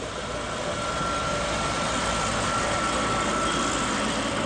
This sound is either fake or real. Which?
real